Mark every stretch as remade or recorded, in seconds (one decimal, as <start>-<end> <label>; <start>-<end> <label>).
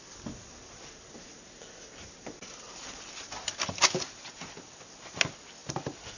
0.0-6.2 recorded